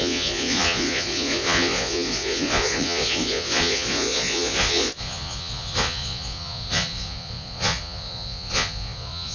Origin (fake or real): fake